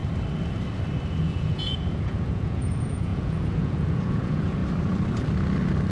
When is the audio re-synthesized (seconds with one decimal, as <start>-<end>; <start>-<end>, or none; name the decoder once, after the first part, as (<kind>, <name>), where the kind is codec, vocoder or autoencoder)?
1.2-4.6 (vocoder, Vocos)